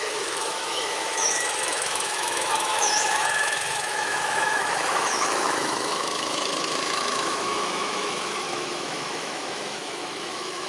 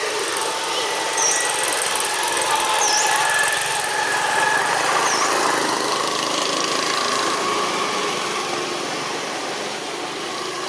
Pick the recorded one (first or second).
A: second